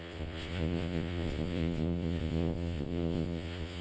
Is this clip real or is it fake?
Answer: fake